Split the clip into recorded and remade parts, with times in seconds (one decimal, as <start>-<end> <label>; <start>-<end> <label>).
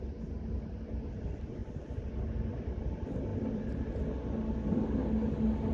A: 0.0-3.3 recorded; 3.3-4.0 remade; 4.0-5.7 recorded